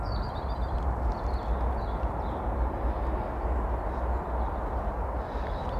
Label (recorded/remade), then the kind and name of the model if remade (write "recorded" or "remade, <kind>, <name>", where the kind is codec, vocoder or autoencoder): recorded